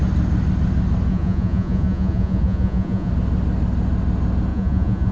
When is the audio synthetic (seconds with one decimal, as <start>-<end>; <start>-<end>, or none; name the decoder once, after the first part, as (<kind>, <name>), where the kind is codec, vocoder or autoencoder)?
1.1-3.1 (vocoder, Vocos); 4.5-5.1